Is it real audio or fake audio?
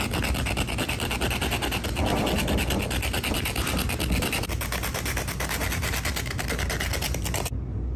real